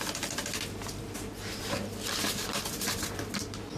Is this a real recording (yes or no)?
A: yes